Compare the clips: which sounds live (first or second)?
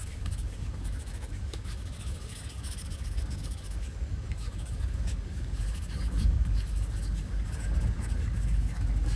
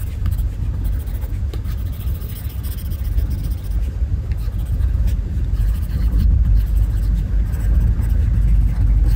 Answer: second